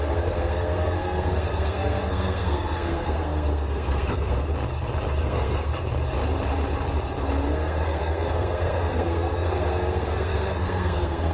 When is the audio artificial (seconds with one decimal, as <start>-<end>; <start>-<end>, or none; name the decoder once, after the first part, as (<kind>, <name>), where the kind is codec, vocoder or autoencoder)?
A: 0.0-4.5 (codec, SNAC); 5.2-5.7; 7.5-11.3